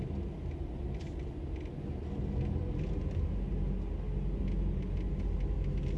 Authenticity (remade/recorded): recorded